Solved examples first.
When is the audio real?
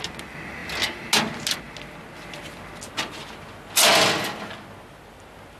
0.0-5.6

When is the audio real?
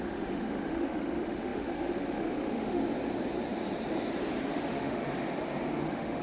2.8-4.5; 5.0-5.8